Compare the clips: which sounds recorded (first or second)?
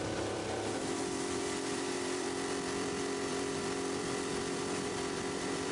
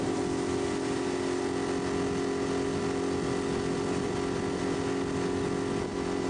second